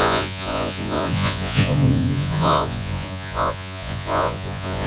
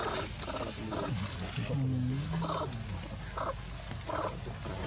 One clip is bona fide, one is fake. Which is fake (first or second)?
first